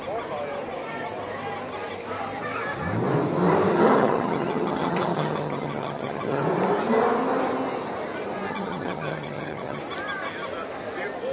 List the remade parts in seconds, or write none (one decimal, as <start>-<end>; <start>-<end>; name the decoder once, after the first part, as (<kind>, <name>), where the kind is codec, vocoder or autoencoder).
3.7-6.4 (vocoder, HiFi-GAN); 8.5-9.8